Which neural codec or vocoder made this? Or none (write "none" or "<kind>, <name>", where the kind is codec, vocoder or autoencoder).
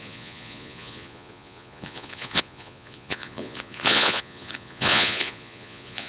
vocoder, Vocos